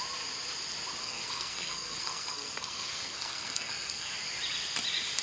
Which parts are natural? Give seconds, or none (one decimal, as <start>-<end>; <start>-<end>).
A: 0.0-1.0; 4.1-5.2